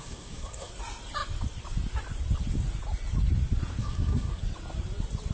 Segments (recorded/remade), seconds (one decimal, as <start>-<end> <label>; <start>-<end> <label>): 0.0-0.7 remade; 0.7-3.8 recorded; 3.8-4.4 remade; 4.4-5.3 recorded